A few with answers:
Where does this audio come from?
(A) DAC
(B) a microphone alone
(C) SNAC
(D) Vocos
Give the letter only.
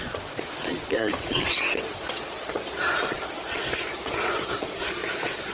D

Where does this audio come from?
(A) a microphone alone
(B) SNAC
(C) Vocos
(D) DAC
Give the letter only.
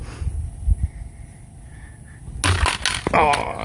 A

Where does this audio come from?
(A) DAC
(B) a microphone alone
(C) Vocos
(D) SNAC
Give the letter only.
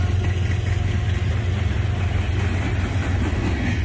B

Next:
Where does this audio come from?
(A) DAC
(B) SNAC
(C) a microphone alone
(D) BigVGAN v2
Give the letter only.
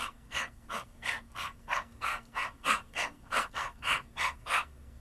B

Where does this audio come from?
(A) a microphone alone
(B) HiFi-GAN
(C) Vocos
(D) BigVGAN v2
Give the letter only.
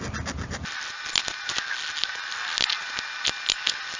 A